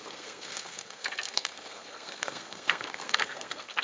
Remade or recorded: remade